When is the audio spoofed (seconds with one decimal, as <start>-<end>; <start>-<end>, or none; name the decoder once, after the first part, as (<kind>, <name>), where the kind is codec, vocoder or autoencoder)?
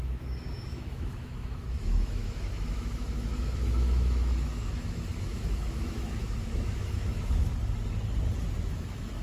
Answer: 0.0-7.5 (autoencoder, DAC-VAE); 8.6-9.2